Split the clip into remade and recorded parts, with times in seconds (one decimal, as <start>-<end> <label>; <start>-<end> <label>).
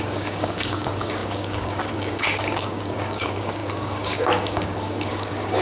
0.0-5.6 remade